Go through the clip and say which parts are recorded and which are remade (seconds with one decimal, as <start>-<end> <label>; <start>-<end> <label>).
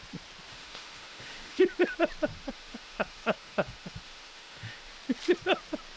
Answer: 0.0-0.5 recorded; 0.5-1.6 remade; 1.6-2.3 recorded; 2.3-4.9 remade; 4.9-6.0 recorded